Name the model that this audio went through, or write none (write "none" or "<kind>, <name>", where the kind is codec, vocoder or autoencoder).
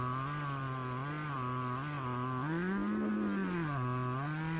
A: none